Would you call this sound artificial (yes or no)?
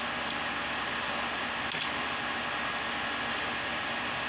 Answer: no